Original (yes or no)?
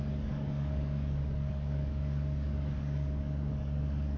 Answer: no